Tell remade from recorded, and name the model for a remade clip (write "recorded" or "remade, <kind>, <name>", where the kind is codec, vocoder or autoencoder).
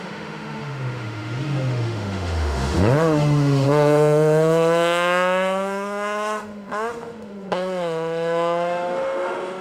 remade, autoencoder, DAC-VAE